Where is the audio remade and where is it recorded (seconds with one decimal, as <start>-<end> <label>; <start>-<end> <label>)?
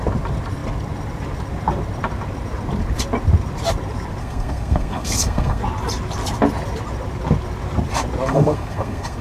0.0-4.2 recorded; 4.2-5.6 remade; 5.6-8.3 recorded; 8.3-9.2 remade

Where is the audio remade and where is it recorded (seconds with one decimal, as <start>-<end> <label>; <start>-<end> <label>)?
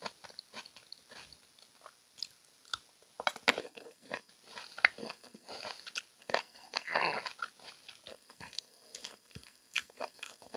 0.0-3.6 recorded; 3.6-4.3 remade; 4.3-5.0 recorded; 5.0-5.5 remade; 5.5-6.2 recorded; 6.2-7.0 remade; 7.0-8.1 recorded; 8.1-10.6 remade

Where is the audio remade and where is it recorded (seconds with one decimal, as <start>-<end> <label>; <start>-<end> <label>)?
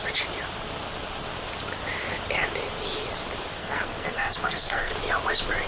0.0-3.6 recorded; 3.6-4.9 remade; 4.9-5.7 recorded